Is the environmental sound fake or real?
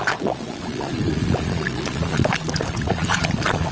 fake